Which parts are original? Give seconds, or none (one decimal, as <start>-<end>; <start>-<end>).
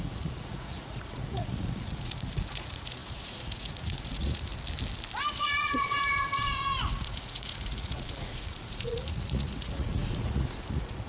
4.5-5.3